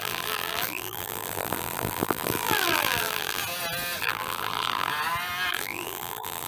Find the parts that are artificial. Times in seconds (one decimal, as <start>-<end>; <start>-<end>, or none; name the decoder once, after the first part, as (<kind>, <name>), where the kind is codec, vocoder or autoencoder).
0.0-3.4 (vocoder, BigVGAN v2); 4.0-4.9; 5.5-6.5

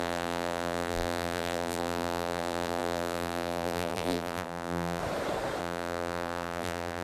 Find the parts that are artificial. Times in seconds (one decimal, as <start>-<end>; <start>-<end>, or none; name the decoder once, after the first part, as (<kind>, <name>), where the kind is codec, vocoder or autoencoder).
0.0-5.0 (vocoder, BigVGAN v2); 5.6-7.0

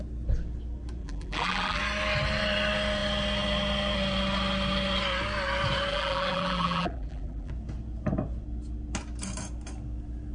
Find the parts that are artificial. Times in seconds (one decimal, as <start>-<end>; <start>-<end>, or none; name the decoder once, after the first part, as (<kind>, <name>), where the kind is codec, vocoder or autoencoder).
1.0-1.8 (vocoder, BigVGAN v2); 5.9-7.5

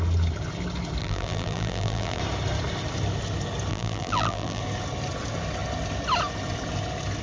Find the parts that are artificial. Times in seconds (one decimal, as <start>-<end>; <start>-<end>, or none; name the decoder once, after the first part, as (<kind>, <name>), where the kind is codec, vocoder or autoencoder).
1.0-2.2 (vocoder, BigVGAN v2); 3.7-4.6

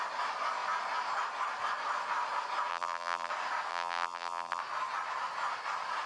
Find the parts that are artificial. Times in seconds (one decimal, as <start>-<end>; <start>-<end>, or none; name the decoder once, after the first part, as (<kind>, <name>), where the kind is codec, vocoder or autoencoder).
2.7-3.3 (vocoder, BigVGAN v2); 3.7-4.6